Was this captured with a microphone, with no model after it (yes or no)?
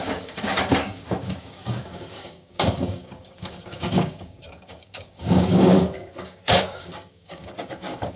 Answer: no